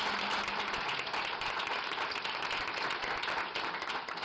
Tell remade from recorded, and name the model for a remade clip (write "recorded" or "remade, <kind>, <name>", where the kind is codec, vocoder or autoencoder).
recorded